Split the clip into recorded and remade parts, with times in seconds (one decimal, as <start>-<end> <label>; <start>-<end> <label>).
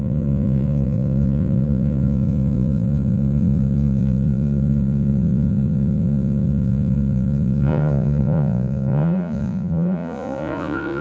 0.0-11.0 remade